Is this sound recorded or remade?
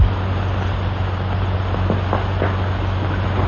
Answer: recorded